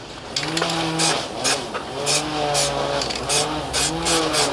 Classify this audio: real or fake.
real